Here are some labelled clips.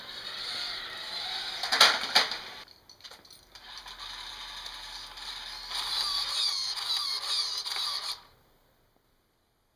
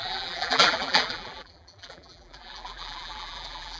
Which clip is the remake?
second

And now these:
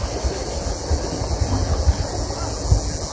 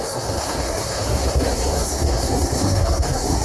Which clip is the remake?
second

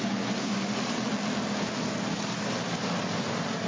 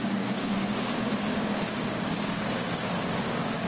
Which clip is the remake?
second